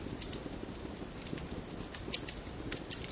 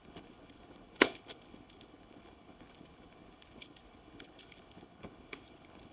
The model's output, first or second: second